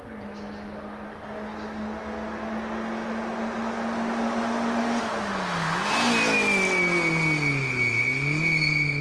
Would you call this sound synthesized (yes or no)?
no